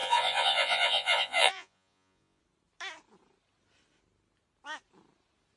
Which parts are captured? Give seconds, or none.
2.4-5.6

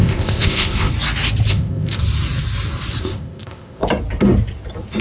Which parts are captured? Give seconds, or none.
0.9-1.5; 2.0-3.0; 3.8-5.0

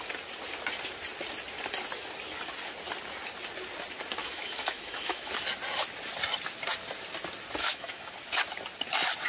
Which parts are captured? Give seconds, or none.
0.0-4.2; 5.3-7.6; 8.1-9.3

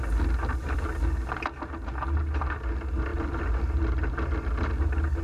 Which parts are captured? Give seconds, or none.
0.0-5.2

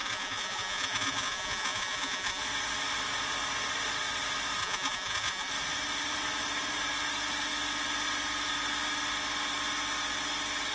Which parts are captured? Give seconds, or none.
2.4-4.6; 5.5-10.7